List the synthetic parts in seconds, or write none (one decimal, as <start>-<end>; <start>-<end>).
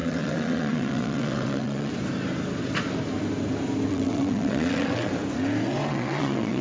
0.0-1.9; 3.9-5.1; 5.9-6.6